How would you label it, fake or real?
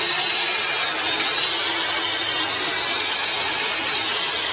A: real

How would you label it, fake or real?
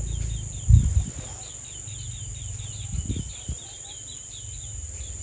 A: real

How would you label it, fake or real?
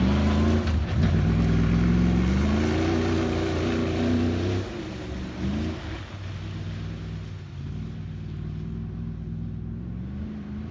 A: real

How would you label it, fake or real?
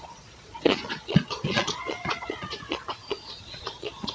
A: fake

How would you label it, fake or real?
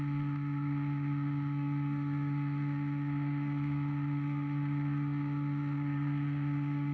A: fake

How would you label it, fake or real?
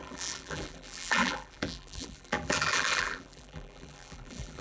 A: fake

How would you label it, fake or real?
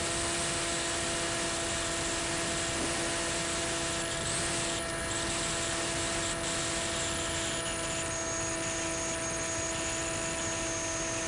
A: real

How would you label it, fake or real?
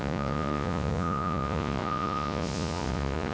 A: fake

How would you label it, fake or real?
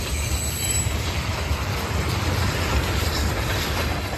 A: fake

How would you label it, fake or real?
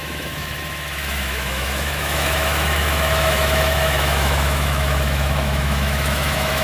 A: fake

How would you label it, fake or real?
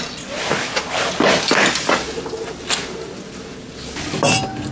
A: real